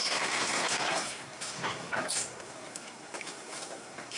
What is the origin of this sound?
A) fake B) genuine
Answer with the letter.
A